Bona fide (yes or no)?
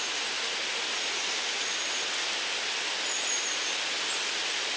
yes